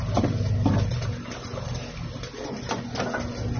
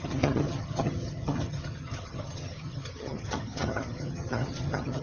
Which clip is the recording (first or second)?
first